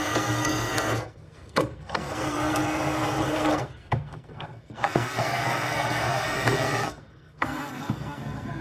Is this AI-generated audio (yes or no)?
yes